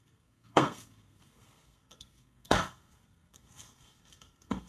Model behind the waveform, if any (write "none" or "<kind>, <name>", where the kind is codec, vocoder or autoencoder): codec, SNAC